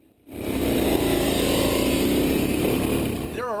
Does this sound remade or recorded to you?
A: remade